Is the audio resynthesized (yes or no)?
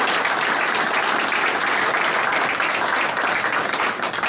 no